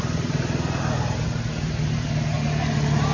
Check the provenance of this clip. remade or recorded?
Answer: recorded